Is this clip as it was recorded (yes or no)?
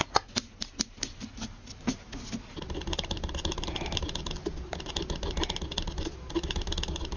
yes